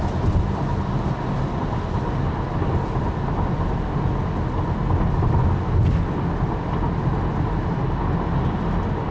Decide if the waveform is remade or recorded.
recorded